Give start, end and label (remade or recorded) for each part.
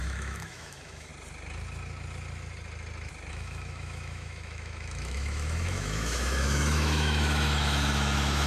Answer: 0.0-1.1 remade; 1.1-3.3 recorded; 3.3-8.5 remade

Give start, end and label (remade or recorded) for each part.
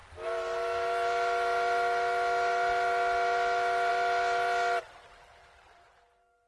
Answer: 0.0-6.5 recorded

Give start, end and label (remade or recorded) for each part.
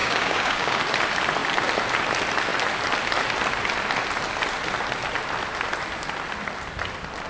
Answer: 0.0-0.8 remade; 0.8-7.3 recorded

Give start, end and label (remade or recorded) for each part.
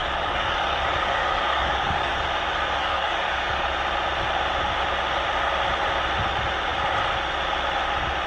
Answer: 0.0-2.2 remade; 2.2-2.8 recorded; 2.8-3.7 remade; 3.7-8.3 recorded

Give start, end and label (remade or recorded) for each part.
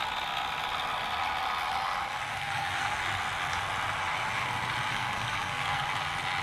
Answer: 0.0-2.3 recorded; 2.3-3.0 remade; 3.0-4.9 recorded; 4.9-5.8 remade; 5.8-6.4 recorded